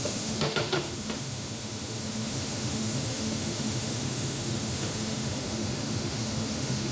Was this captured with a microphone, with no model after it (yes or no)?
no